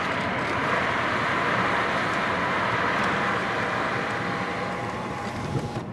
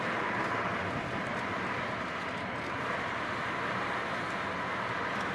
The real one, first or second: second